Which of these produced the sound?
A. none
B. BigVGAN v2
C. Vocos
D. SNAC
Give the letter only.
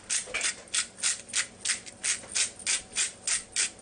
A